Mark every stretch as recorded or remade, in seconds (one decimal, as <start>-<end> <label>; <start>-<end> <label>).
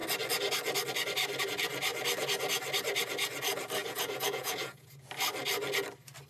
0.0-3.8 recorded; 3.8-5.1 remade; 5.1-6.3 recorded